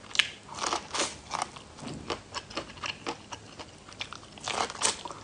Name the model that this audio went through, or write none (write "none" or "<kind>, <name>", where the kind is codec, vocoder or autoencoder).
none